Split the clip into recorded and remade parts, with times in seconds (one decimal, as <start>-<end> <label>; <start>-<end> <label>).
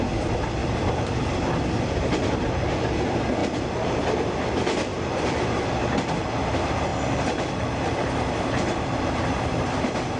0.0-0.6 recorded; 0.6-1.2 remade; 1.2-3.4 recorded; 3.4-4.3 remade; 4.3-4.9 recorded; 4.9-6.1 remade; 6.1-6.9 recorded; 6.9-9.6 remade; 9.6-10.2 recorded